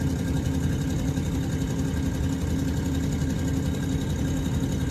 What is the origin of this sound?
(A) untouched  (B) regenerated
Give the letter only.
A